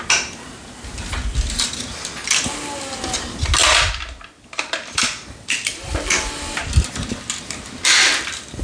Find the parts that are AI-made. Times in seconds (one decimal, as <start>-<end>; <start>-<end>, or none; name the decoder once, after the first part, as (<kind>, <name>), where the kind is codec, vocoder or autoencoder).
none